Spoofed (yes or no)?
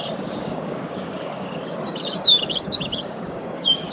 yes